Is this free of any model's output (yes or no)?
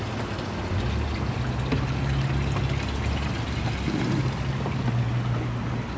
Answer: yes